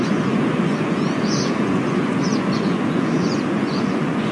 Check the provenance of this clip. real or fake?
fake